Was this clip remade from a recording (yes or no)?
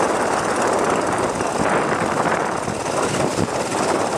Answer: no